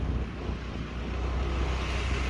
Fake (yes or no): no